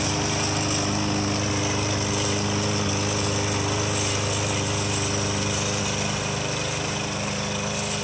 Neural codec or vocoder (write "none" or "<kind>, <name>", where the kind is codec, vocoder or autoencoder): none